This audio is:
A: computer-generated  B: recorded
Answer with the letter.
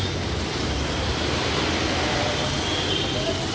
B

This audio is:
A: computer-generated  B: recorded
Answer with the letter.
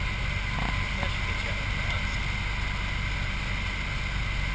B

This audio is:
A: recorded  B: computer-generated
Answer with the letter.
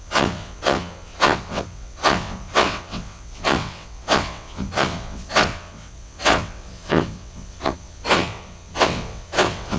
B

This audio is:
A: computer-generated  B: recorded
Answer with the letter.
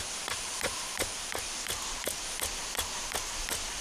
A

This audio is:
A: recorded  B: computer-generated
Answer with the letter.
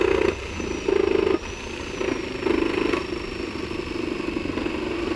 A